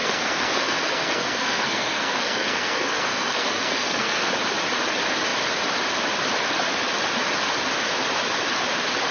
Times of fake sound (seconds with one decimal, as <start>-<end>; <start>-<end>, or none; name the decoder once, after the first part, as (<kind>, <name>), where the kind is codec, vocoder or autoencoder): 0.0-4.3 (codec, SNAC)